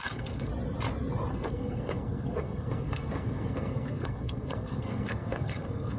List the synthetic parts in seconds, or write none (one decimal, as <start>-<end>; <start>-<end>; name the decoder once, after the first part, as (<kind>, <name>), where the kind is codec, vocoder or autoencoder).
0.0-0.5 (codec, SNAC); 1.3-6.0

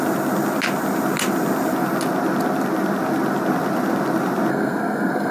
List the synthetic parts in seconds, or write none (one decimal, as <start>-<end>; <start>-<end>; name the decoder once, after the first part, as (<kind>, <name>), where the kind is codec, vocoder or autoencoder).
4.5-5.3 (codec, SNAC)

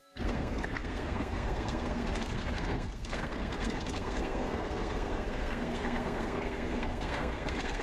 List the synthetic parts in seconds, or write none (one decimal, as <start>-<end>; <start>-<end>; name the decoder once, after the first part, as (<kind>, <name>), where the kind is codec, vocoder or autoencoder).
0.0-7.8 (codec, SNAC)

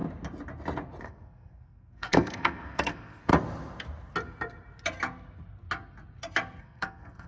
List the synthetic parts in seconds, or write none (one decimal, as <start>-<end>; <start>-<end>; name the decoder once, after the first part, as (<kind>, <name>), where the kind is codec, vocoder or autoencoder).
1.0-3.3 (codec, SNAC); 6.6-7.3